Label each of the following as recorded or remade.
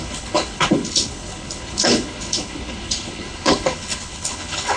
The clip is remade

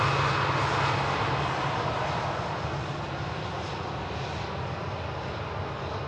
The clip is recorded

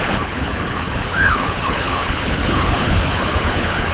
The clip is remade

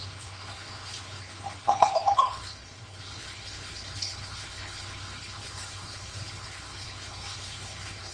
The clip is remade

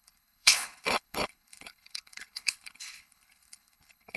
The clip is remade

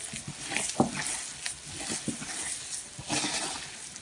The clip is recorded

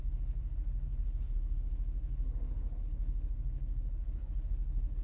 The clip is remade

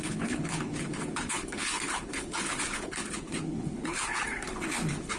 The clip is remade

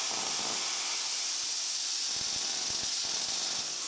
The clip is recorded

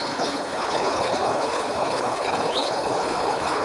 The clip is remade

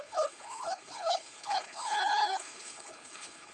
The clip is remade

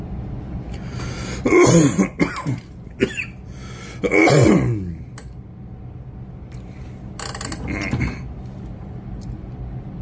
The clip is recorded